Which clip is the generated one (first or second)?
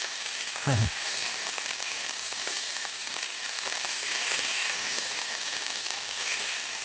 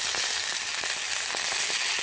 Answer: first